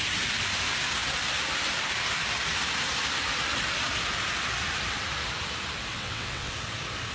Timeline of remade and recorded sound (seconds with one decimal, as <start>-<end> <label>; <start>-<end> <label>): 0.0-5.9 recorded; 5.9-6.5 remade; 6.5-7.1 recorded

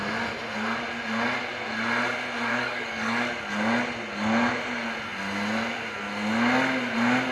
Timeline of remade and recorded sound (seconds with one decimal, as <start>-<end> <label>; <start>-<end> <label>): 0.0-2.5 recorded; 2.5-3.3 remade; 3.3-7.3 recorded

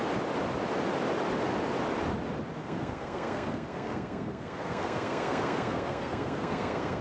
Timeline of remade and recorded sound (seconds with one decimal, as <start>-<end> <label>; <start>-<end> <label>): 0.0-2.6 recorded; 2.6-7.0 remade